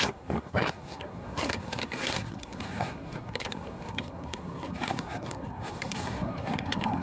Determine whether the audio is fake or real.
fake